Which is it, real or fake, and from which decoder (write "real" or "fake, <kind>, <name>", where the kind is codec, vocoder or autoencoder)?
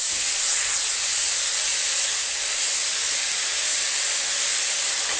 real